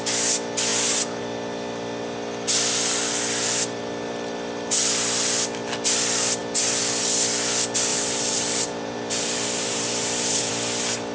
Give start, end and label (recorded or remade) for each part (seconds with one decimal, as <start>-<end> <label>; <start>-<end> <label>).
0.0-7.9 recorded; 7.9-10.5 remade; 10.5-11.1 recorded